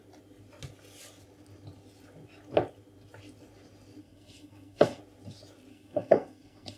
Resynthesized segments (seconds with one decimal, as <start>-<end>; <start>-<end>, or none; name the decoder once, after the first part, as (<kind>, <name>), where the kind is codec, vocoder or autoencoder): 4.0-5.0 (codec, SNAC); 5.7-6.8